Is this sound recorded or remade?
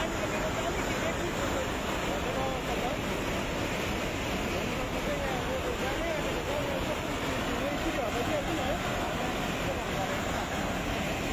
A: recorded